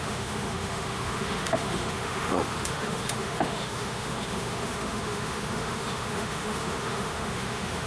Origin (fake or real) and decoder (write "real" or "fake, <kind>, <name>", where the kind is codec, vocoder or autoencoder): fake, autoencoder, DAC-VAE